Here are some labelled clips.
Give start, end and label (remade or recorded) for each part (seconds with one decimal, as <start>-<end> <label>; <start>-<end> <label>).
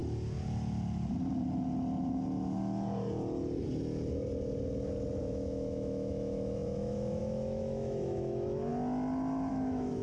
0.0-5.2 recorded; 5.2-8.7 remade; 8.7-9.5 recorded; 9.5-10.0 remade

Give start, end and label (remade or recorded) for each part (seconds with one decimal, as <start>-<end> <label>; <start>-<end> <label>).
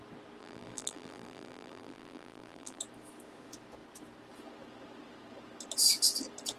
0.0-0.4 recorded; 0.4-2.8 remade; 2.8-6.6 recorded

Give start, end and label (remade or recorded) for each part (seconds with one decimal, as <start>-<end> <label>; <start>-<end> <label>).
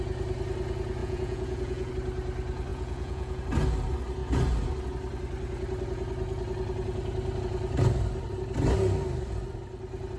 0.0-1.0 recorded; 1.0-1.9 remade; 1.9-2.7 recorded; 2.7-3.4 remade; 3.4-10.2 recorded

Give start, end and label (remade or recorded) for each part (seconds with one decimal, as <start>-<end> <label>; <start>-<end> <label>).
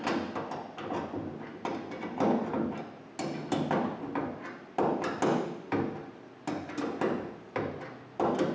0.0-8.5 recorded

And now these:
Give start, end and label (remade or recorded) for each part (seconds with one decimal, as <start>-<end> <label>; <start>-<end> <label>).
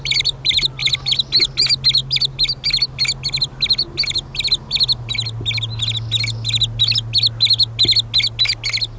0.0-9.0 recorded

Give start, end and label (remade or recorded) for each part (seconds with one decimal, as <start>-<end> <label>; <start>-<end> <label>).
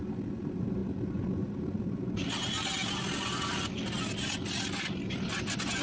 0.0-5.8 recorded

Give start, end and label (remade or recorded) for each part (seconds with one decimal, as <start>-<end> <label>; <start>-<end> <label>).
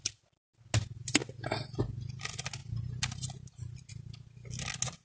0.0-5.0 recorded